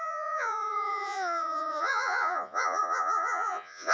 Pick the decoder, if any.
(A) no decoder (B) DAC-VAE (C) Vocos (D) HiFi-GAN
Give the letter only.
C